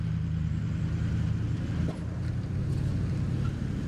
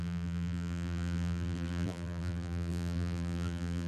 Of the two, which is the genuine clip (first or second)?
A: first